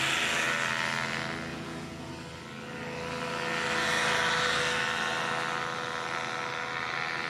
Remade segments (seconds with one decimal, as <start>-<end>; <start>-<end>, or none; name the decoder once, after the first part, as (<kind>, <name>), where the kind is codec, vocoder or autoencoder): 1.5-2.1 (vocoder, Vocos)